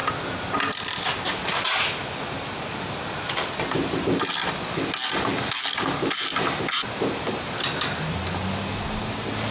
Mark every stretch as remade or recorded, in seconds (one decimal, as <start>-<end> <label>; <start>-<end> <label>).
0.0-9.5 recorded